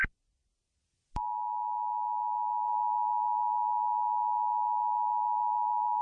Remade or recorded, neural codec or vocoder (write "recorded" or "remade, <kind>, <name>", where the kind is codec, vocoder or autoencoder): recorded